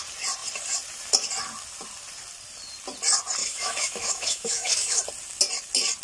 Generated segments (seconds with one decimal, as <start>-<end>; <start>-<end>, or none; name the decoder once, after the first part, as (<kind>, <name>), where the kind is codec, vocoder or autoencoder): 3.4-5.0 (autoencoder, DAC-VAE)